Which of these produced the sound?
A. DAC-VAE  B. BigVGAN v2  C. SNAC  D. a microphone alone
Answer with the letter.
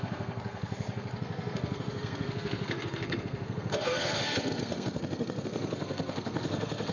C